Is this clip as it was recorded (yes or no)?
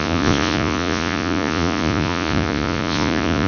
no